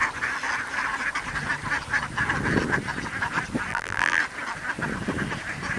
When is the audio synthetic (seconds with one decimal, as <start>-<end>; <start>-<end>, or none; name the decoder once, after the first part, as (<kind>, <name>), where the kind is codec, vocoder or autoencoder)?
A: 3.7-4.2 (vocoder, BigVGAN v2)